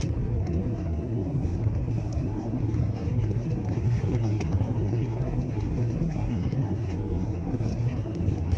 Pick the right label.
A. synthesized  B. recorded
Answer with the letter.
A